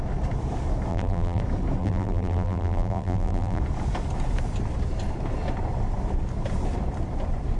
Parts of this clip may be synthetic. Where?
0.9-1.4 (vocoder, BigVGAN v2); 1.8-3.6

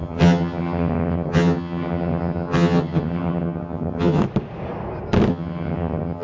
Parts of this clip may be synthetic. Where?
0.0-4.2 (vocoder, HiFi-GAN); 5.3-6.2

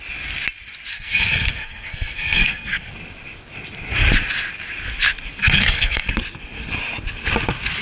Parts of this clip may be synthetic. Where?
0.9-2.9 (codec, SNAC); 5.4-6.1

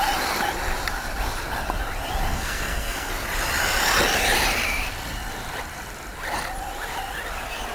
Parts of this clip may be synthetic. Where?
2.3-3.1 (codec, SNAC)

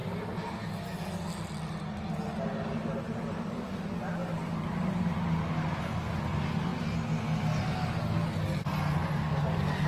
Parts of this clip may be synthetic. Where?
0.0-0.5 (vocoder, BigVGAN v2); 4.2-5.2